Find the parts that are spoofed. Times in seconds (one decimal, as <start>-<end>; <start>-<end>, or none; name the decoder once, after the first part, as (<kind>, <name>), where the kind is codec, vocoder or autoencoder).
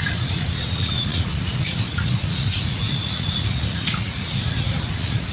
0.0-5.3 (vocoder, Vocos)